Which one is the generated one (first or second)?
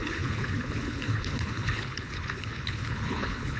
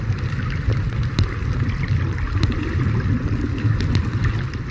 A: first